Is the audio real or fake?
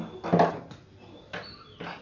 real